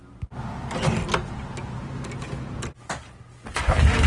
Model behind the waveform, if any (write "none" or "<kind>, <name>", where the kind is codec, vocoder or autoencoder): none